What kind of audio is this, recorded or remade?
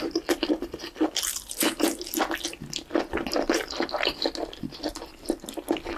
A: recorded